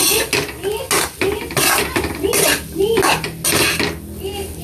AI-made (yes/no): no